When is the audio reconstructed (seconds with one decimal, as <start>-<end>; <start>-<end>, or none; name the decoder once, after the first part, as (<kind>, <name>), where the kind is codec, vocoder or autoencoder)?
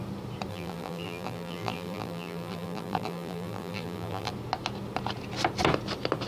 0.5-4.3 (vocoder, BigVGAN v2)